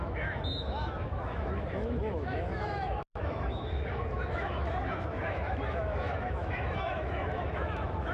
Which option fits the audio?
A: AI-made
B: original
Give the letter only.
A